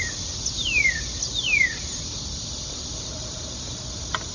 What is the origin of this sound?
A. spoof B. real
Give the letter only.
B